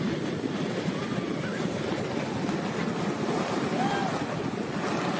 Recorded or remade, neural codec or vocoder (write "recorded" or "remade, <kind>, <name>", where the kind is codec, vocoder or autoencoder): recorded